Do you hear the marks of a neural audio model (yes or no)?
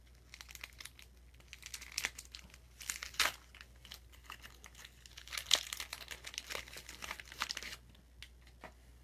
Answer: no